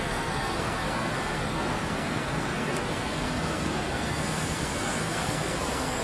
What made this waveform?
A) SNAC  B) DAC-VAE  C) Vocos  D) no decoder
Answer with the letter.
A